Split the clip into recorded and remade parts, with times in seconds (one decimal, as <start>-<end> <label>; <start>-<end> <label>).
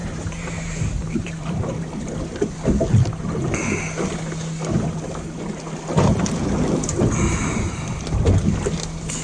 0.0-1.9 remade; 1.9-9.2 recorded